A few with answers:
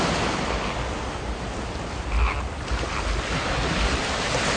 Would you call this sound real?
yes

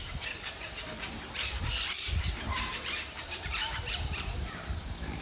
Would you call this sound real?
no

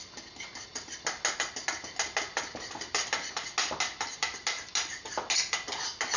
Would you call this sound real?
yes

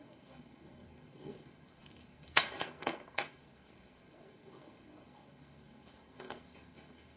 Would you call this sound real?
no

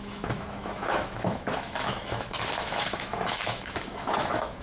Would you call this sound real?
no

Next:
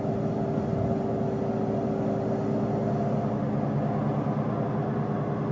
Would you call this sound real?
yes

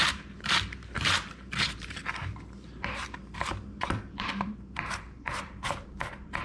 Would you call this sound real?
no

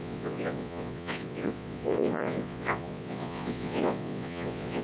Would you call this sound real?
no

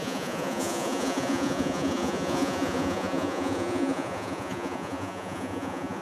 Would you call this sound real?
no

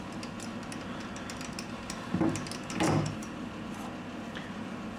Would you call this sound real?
yes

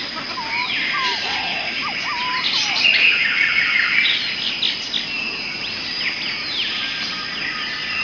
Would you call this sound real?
yes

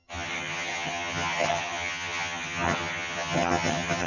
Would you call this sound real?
no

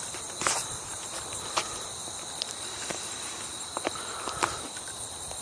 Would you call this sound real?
no